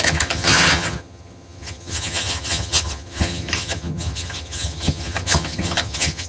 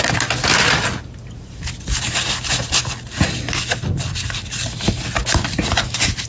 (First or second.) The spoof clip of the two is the first